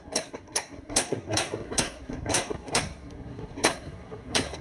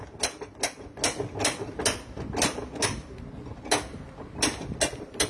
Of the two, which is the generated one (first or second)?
first